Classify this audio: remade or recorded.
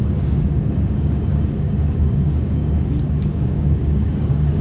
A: remade